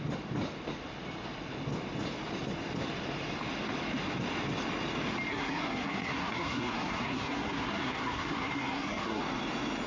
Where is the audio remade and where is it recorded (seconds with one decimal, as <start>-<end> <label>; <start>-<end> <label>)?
0.0-5.3 recorded; 5.3-9.2 remade; 9.2-9.9 recorded